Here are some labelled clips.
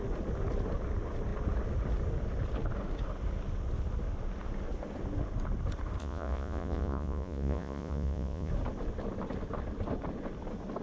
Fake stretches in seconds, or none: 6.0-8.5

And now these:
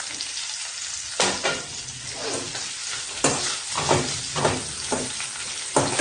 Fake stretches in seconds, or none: none